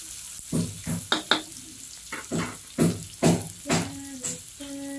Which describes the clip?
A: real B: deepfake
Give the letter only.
A